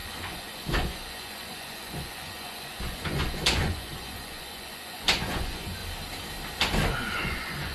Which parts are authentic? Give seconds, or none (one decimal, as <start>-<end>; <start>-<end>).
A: 5.8-6.9